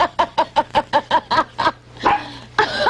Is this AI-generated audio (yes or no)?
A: no